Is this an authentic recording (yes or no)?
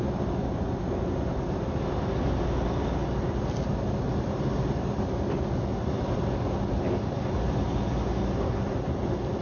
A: yes